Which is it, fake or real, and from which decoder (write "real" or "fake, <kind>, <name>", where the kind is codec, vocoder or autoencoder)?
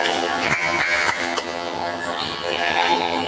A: fake, vocoder, HiFi-GAN